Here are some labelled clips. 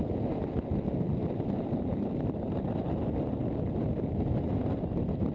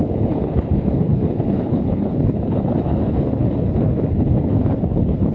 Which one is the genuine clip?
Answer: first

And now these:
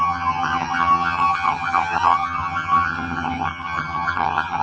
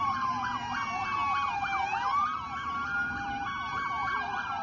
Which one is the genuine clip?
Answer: second